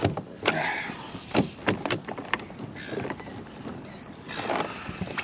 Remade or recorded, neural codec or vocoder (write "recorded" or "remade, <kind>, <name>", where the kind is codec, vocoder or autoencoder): recorded